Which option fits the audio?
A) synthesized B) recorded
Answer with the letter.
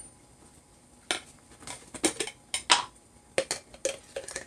B